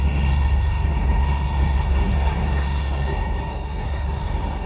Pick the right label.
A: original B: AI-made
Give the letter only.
B